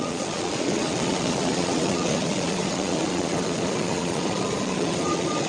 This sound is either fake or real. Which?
fake